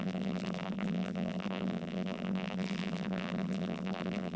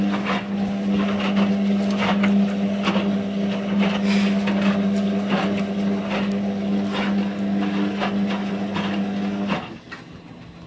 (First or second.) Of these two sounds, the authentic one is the second